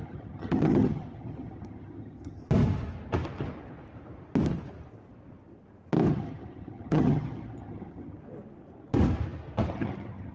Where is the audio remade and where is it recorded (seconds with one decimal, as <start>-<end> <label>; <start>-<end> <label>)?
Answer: 0.0-2.4 remade; 2.4-6.1 recorded; 6.1-8.2 remade; 8.2-9.7 recorded; 9.7-10.3 remade